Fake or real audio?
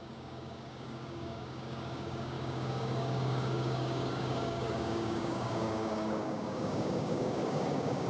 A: fake